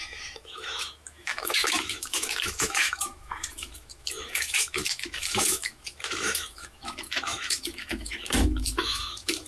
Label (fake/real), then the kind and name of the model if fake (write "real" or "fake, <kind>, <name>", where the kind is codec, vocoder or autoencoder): fake, autoencoder, DAC-VAE